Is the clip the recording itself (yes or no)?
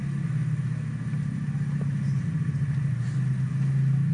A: yes